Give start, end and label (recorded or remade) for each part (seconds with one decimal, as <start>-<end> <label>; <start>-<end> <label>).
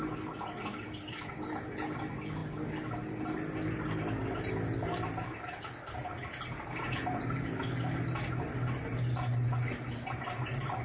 0.0-10.8 recorded